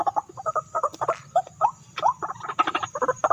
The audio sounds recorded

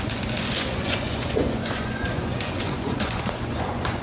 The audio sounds remade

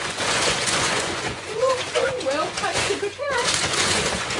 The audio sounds remade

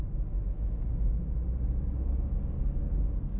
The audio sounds recorded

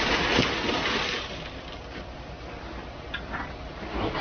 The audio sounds recorded